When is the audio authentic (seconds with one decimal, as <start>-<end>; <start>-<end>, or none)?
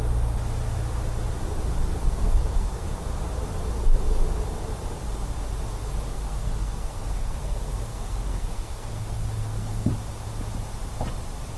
0.0-1.9; 2.9-6.1; 9.9-11.6